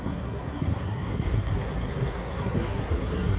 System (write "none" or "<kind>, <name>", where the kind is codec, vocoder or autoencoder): codec, SNAC